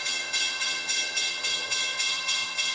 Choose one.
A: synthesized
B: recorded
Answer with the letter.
A